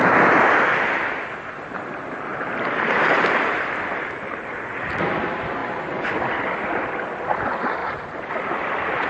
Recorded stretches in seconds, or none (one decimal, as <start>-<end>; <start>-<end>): 0.6-2.3; 3.3-9.1